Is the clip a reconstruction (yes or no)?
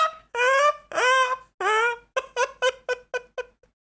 no